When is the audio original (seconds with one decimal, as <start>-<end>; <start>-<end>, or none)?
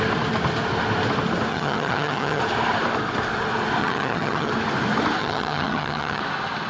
0.0-1.5; 2.4-3.8; 4.5-5.2; 6.2-6.7